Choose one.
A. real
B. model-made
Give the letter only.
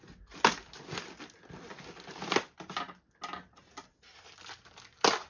A